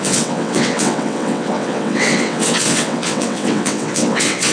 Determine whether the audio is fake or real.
fake